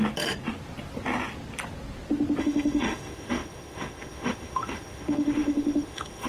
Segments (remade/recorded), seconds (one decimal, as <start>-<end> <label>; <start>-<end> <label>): 0.0-2.4 recorded; 2.4-6.3 remade

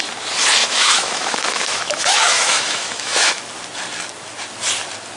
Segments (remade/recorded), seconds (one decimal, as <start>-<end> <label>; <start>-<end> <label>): 0.0-0.6 recorded; 0.6-3.4 remade; 3.4-5.2 recorded

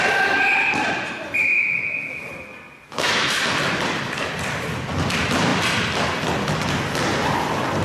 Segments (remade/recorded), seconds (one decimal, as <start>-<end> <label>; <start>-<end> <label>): 0.0-1.4 recorded; 1.4-2.3 remade; 2.3-2.9 recorded; 2.9-3.4 remade; 3.4-7.8 recorded